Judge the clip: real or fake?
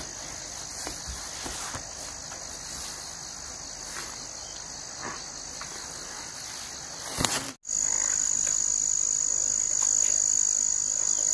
real